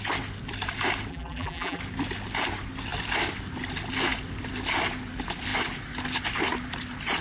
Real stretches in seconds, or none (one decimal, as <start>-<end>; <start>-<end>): 0.0-1.1; 1.8-7.2